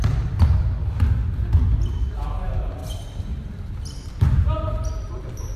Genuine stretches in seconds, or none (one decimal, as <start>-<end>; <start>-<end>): 0.0-2.8; 4.1-5.6